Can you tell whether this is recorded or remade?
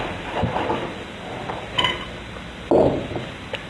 recorded